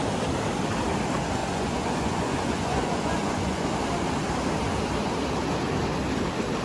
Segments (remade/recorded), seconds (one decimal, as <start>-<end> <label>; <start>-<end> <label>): 0.0-1.4 recorded; 1.4-3.7 remade; 3.7-6.6 recorded